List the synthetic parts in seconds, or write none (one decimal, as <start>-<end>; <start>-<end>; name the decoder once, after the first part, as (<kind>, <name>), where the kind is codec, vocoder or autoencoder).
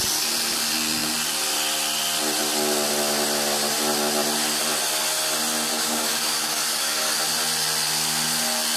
5.7-7.2 (codec, DAC)